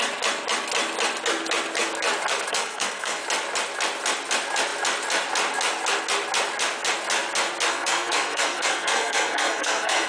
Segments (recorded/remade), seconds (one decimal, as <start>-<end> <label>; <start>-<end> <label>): 0.0-2.5 recorded; 2.5-3.2 remade; 3.2-7.7 recorded; 7.7-10.1 remade

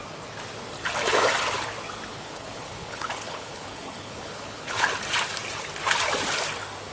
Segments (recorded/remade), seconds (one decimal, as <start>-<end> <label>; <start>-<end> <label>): 0.0-2.1 recorded; 2.1-4.9 remade; 4.9-6.9 recorded

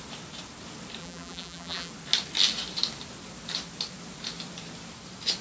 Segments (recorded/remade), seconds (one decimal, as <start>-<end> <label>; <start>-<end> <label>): 0.0-1.0 recorded; 1.0-1.9 remade; 1.9-5.4 recorded

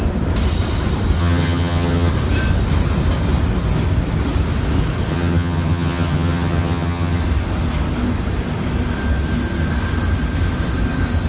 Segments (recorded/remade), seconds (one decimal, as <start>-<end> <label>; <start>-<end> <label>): 0.0-1.2 recorded; 1.2-2.1 remade; 2.1-5.1 recorded; 5.1-7.2 remade; 7.2-11.3 recorded